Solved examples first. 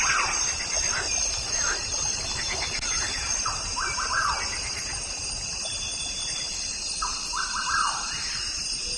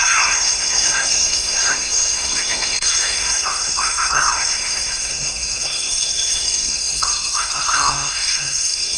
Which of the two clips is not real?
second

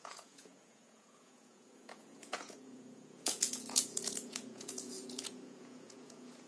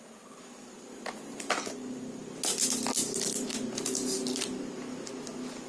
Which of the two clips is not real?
first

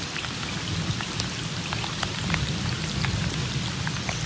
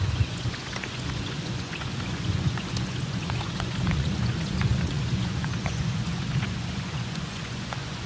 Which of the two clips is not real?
second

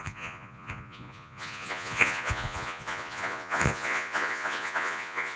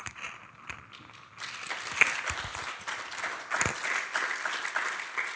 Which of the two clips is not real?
first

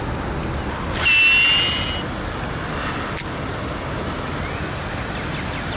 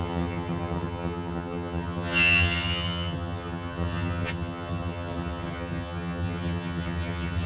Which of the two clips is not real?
second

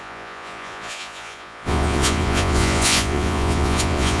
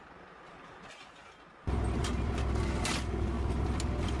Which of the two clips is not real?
first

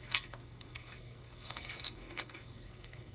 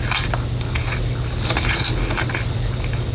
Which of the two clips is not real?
first